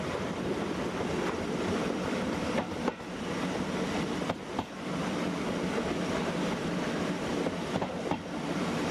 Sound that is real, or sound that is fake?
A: real